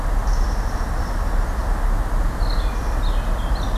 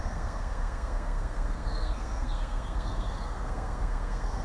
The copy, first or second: second